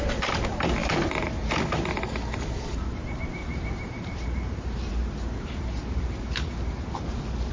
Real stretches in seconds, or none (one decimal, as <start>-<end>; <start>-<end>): 0.0-0.8; 1.6-3.4; 5.1-7.5

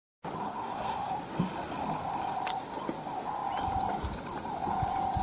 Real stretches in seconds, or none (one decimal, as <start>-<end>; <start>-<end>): 0.0-0.4; 1.1-5.2

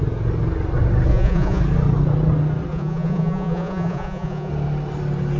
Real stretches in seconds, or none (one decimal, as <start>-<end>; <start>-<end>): 0.0-1.1; 1.6-2.7; 4.5-5.4

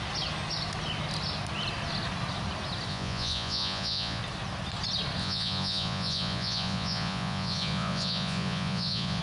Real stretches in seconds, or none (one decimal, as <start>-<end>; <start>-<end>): 0.0-2.9; 4.2-5.2

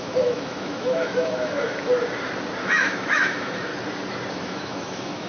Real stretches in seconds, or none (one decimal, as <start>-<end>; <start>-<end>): 1.9-2.6; 3.7-4.3

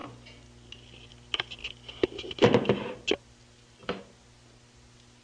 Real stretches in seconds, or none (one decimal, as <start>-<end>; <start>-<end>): 0.0-5.2